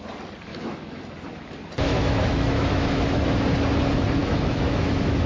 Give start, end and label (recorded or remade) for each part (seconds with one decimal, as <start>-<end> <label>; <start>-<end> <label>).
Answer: 0.0-0.5 recorded; 0.5-1.0 remade; 1.0-1.9 recorded; 1.9-3.2 remade; 3.2-4.2 recorded; 4.2-5.3 remade

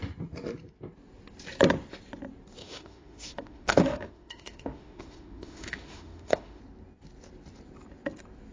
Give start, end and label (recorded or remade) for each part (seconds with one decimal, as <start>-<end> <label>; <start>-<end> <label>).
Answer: 0.0-2.6 recorded; 2.6-6.6 remade; 6.6-8.5 recorded

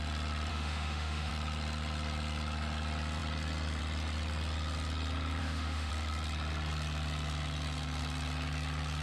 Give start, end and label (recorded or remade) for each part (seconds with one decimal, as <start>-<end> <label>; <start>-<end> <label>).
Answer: 0.0-0.5 recorded; 0.5-1.3 remade; 1.3-5.4 recorded; 5.4-5.9 remade; 5.9-9.0 recorded

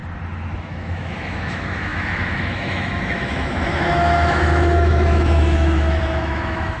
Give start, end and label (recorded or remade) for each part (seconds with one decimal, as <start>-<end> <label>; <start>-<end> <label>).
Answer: 0.0-0.6 recorded; 0.6-6.8 remade

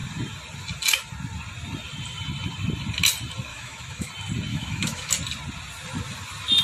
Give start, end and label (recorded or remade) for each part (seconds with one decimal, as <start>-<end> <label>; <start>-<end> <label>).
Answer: 0.0-3.5 recorded; 3.5-4.1 remade; 4.1-4.5 recorded; 4.5-5.1 remade; 5.1-6.6 recorded